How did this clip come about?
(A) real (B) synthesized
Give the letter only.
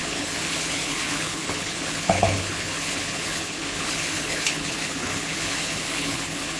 B